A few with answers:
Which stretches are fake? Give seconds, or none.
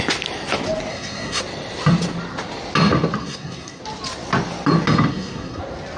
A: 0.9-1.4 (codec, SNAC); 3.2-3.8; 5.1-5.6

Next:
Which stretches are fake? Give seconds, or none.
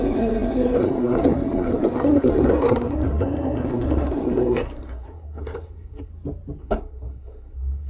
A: 0.0-6.1 (codec, SNAC); 6.6-7.9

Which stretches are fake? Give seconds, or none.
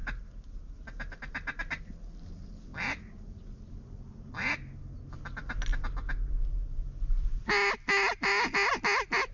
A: none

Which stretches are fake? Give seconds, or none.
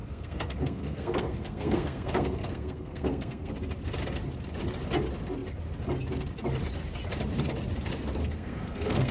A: 0.0-3.5 (codec, SNAC); 8.2-9.1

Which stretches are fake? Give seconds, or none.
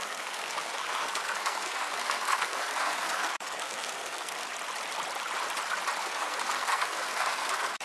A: 0.0-4.5 (codec, SNAC); 6.0-7.8